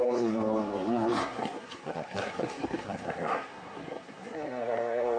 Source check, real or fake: fake